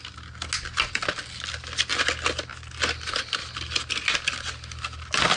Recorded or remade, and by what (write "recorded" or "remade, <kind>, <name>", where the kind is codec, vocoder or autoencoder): recorded